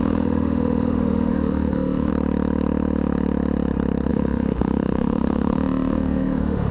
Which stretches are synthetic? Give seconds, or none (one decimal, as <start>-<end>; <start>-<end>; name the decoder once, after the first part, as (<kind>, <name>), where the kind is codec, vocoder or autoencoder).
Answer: 0.0-2.1 (autoencoder, DAC-VAE); 4.1-6.7

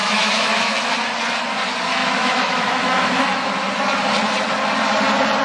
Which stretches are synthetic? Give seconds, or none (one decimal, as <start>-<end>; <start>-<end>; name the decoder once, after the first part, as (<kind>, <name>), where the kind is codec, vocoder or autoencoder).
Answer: 0.0-0.8 (autoencoder, DAC-VAE); 2.0-3.2

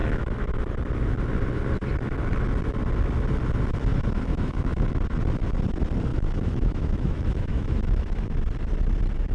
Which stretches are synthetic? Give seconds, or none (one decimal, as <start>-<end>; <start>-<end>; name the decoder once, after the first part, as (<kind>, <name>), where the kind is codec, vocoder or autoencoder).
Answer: 0.0-0.6 (autoencoder, DAC-VAE); 3.9-4.9; 6.1-8.4

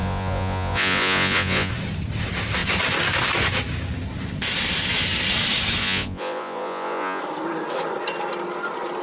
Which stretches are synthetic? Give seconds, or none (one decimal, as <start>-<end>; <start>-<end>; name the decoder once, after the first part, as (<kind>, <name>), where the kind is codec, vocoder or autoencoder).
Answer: 0.0-1.7 (vocoder, Vocos); 5.8-7.2